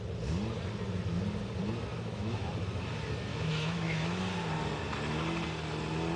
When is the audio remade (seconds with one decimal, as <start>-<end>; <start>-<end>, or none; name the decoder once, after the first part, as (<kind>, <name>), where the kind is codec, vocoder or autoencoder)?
1.9-2.5 (autoencoder, DAC-VAE); 3.3-4.2